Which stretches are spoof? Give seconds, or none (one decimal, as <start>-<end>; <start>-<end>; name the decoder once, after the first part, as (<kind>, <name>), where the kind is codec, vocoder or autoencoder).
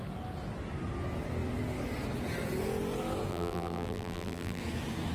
3.3-4.6 (vocoder, BigVGAN v2)